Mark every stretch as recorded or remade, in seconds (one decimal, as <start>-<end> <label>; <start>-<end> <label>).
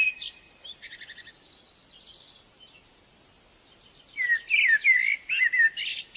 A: 0.0-6.2 recorded